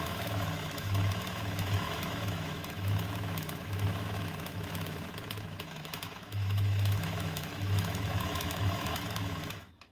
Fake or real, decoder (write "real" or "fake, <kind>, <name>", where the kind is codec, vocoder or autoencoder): fake, autoencoder, DAC-VAE